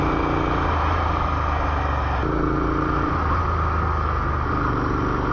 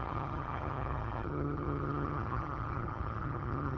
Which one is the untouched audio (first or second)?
first